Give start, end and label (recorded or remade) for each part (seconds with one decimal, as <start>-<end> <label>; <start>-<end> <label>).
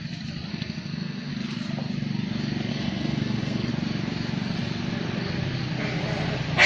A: 0.0-0.5 recorded; 0.5-1.3 remade; 1.3-2.7 recorded; 2.7-3.7 remade; 3.7-6.7 recorded